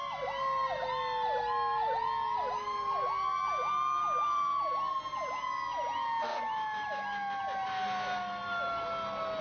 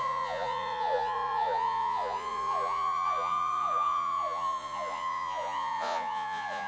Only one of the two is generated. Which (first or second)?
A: second